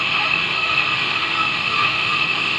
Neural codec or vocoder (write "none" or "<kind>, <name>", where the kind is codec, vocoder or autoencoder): autoencoder, DAC-VAE